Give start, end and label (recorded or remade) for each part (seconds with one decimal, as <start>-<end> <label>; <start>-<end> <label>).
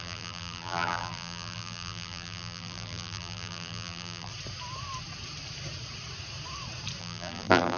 0.0-4.3 remade; 4.3-7.0 recorded; 7.0-7.8 remade